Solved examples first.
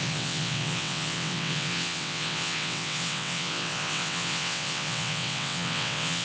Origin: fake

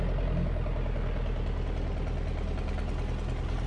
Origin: real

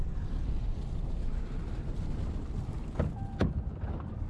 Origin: fake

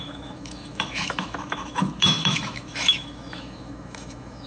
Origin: fake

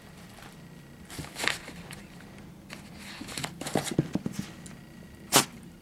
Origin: real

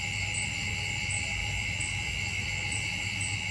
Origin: real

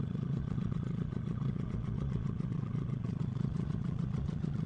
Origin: fake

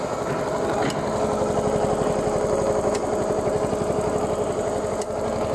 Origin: real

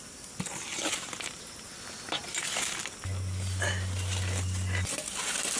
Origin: real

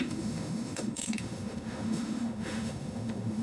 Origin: fake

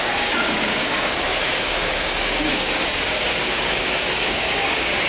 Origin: fake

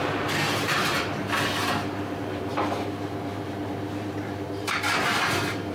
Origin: fake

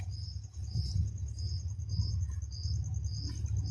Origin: real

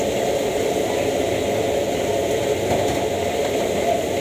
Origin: real